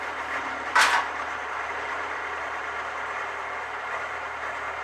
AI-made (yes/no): yes